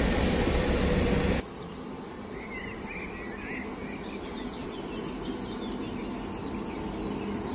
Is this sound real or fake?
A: real